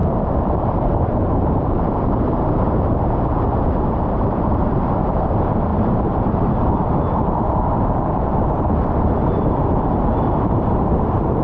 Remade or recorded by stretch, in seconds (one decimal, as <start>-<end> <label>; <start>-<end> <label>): 0.0-11.4 remade